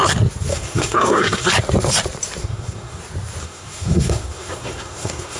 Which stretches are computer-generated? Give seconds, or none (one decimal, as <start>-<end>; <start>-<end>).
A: 0.5-1.5; 2.4-3.0; 3.4-5.4